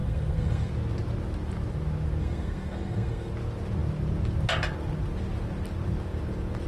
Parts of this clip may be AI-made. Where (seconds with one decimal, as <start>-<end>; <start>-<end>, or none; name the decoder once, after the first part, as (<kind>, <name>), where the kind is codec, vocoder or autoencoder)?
0.0-0.7 (codec, SNAC); 2.2-3.3